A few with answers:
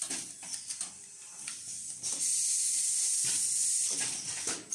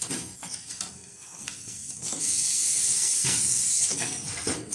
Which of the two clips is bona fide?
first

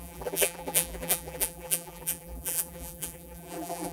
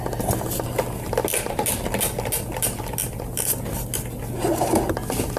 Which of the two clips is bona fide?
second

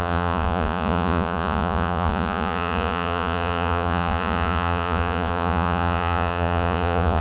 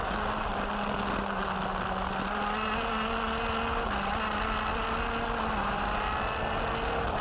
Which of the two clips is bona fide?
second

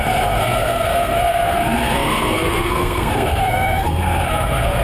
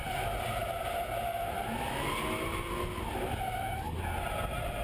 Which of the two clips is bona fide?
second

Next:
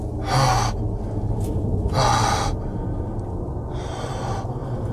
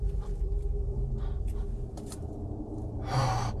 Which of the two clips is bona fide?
first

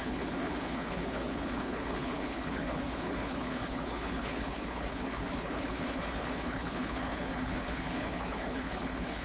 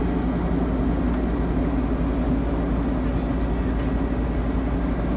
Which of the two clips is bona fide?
second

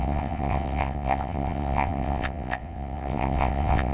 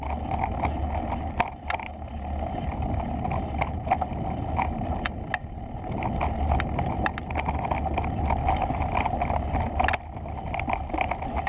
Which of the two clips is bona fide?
second